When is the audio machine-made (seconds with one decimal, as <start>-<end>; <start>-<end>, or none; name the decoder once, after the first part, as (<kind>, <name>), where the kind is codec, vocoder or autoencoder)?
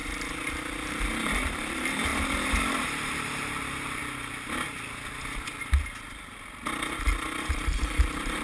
0.9-4.0 (vocoder, BigVGAN v2); 7.8-8.4